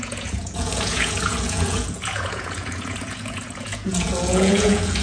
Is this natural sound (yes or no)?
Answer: no